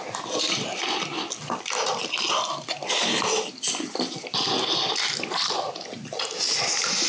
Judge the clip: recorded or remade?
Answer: recorded